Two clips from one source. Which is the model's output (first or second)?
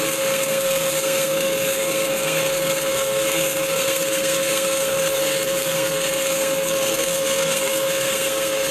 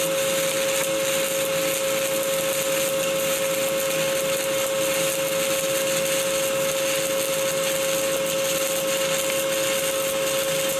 first